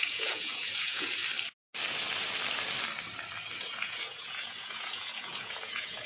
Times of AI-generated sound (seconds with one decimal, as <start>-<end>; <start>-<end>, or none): 0.0-1.2; 3.6-6.1